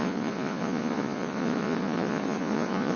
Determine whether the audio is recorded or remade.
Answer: remade